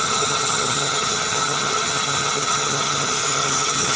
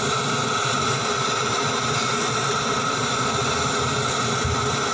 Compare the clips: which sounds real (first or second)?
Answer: second